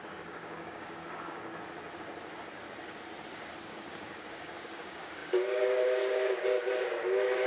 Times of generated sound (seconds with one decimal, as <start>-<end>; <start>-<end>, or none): 0.0-1.5; 3.6-7.5

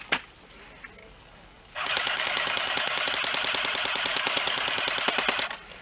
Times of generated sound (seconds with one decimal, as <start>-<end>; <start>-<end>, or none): 1.0-3.1; 4.1-4.8

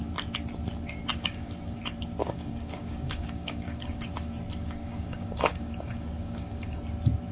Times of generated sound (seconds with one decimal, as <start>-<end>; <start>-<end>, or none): 1.1-1.8; 2.2-4.1; 4.6-6.8

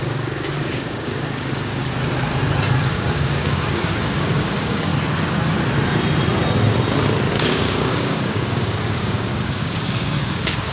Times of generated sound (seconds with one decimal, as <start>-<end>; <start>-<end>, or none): 0.0-1.8; 2.8-4.9; 7.3-10.7

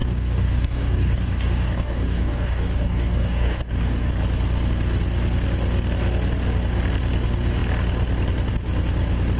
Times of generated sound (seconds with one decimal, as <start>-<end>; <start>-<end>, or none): 0.0-4.1

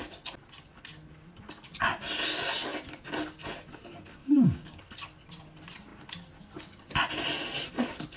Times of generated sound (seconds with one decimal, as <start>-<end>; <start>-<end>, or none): 4.2-4.8

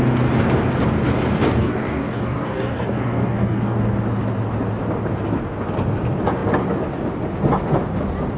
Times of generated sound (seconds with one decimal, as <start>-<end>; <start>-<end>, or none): 1.6-3.9

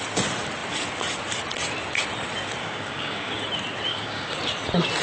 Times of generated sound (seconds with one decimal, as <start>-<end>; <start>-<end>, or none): 2.6-3.3; 3.9-4.4